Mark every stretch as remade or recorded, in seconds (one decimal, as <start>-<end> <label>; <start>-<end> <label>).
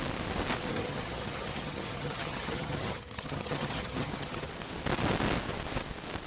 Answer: 0.0-0.7 recorded; 0.7-4.5 remade; 4.5-6.3 recorded